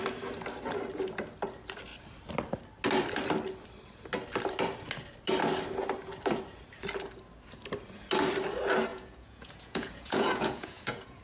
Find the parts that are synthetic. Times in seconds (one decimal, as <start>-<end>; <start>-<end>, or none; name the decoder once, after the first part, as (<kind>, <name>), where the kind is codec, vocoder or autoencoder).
8.9-11.2 (vocoder, Vocos)